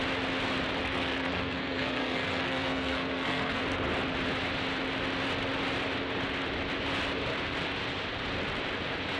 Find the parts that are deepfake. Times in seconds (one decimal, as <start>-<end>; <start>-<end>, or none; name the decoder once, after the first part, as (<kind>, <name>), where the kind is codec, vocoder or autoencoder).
0.8-3.6 (codec, SNAC)